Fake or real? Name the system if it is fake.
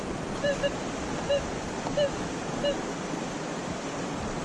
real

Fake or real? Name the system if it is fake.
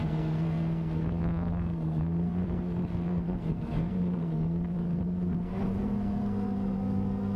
fake, codec, SNAC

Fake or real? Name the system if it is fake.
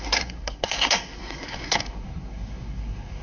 fake, codec, SNAC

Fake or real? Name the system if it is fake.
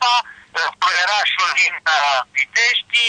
real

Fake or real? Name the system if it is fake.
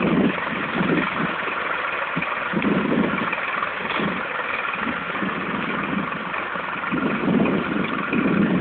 real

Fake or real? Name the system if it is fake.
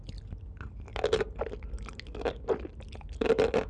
real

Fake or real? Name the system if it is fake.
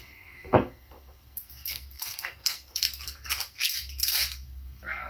fake, codec, SNAC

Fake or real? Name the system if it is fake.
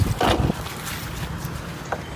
real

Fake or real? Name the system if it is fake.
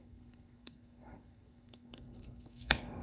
fake, codec, SNAC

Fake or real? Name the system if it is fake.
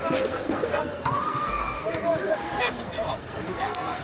fake, codec, SNAC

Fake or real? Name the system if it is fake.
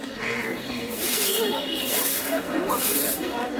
fake, codec, SNAC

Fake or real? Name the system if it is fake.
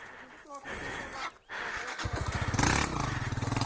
real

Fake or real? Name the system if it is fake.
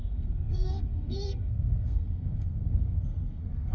fake, codec, SNAC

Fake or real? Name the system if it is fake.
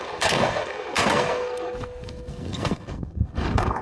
fake, codec, SNAC